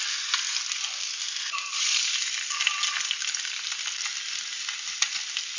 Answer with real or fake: real